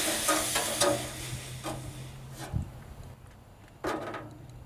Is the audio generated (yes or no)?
no